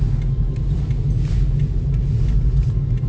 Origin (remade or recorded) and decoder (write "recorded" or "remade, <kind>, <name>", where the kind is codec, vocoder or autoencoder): recorded